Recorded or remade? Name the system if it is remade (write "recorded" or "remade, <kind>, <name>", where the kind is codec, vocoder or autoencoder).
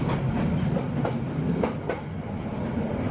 recorded